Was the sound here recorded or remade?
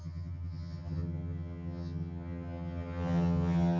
remade